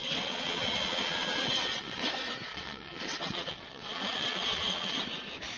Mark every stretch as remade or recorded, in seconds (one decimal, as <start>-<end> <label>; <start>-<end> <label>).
0.0-2.1 remade; 2.1-2.5 recorded; 2.5-5.0 remade; 5.0-5.6 recorded